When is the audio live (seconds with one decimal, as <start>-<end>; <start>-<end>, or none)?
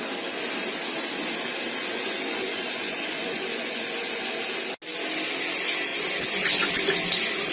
0.0-1.8; 4.3-5.9; 6.7-7.5